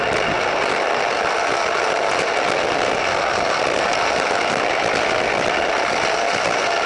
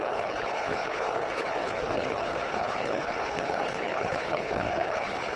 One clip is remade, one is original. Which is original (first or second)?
first